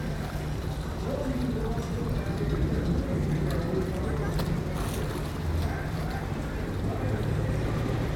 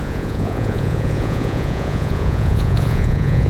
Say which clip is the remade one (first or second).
second